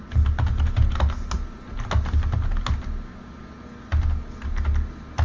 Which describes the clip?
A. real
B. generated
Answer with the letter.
A